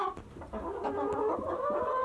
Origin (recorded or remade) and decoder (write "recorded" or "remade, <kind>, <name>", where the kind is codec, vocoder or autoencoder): recorded